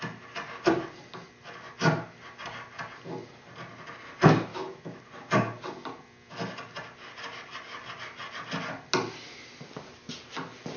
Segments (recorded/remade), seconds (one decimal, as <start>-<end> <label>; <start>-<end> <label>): 0.0-4.5 recorded; 4.5-5.0 remade; 5.0-10.8 recorded